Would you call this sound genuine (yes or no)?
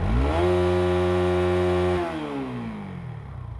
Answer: yes